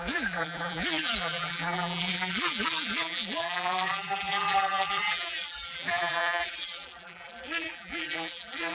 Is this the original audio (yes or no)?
no